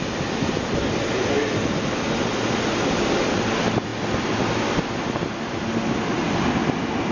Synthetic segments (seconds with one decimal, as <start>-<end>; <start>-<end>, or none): none